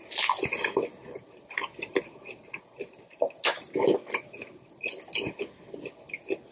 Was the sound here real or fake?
real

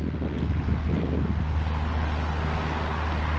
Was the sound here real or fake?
real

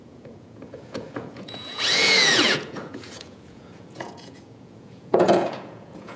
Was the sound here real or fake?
fake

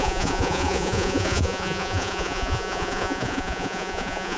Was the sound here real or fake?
fake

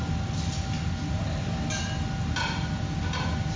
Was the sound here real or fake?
real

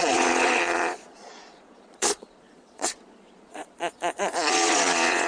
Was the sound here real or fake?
fake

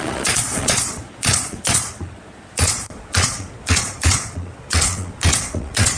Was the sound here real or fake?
fake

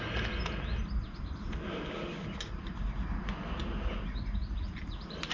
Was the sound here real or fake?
real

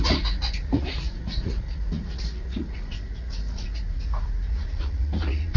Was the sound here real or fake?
fake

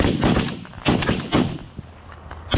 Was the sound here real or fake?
real